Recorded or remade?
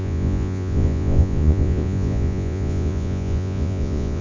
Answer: remade